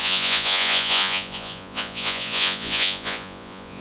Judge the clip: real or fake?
fake